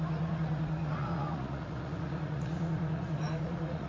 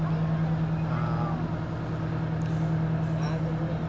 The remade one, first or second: first